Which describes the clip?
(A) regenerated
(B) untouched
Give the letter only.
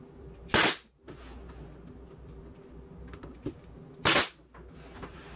B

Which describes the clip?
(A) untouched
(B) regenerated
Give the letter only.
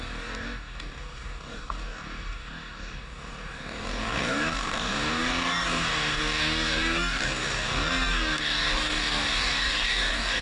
B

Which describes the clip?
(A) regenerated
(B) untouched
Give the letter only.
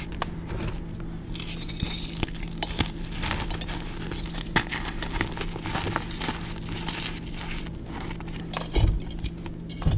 B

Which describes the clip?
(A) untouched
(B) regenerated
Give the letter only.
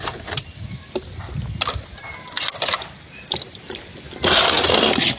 A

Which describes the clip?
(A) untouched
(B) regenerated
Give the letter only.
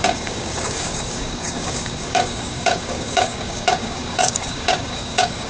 B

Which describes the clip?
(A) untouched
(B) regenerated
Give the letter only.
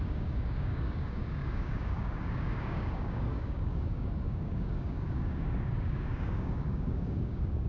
B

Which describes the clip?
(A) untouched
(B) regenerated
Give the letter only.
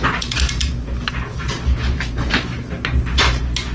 A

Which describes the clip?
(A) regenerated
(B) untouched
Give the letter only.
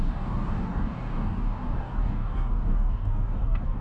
A